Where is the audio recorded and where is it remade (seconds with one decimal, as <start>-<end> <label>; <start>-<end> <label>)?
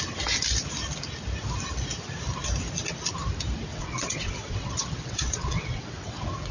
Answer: 0.0-3.7 recorded; 3.7-6.5 remade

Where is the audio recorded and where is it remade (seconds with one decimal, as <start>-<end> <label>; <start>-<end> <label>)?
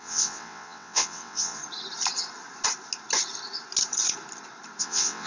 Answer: 0.0-1.6 remade; 1.6-4.8 recorded; 4.8-5.3 remade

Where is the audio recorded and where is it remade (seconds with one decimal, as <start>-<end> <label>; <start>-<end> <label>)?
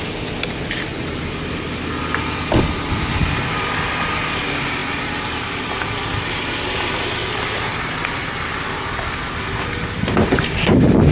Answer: 0.0-11.1 recorded